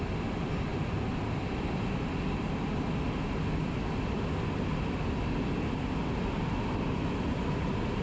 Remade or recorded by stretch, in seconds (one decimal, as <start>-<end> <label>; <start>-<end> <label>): 0.0-8.0 recorded